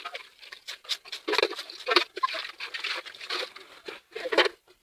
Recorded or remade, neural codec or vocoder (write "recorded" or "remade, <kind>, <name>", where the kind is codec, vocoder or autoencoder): recorded